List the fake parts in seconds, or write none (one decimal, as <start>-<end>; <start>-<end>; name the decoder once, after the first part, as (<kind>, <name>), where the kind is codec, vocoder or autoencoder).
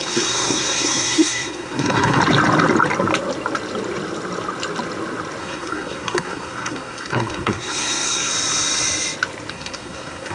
0.0-2.2 (codec, SNAC); 5.4-8.3; 9.5-10.3